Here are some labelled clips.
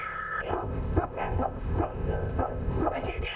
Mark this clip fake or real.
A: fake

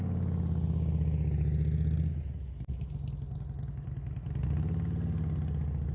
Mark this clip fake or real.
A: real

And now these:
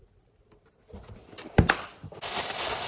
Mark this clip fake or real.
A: real